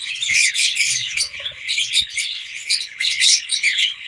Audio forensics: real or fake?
fake